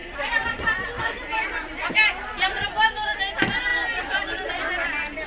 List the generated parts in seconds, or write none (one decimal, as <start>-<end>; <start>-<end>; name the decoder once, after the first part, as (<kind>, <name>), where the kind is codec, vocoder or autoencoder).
0.0-3.2 (vocoder, BigVGAN v2)